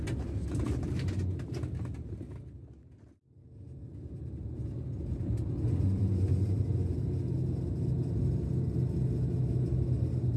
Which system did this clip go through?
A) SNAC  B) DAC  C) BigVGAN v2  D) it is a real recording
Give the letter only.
D